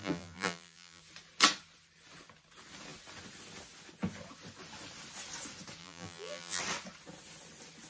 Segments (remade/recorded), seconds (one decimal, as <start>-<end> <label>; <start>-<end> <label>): 0.0-1.0 remade; 1.0-5.8 recorded; 5.8-6.6 remade; 6.6-7.9 recorded